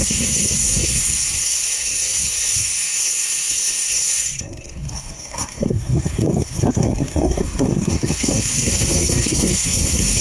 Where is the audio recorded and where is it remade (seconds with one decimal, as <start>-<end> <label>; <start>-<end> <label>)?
0.0-10.2 remade